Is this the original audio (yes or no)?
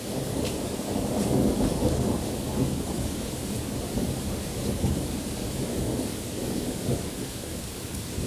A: no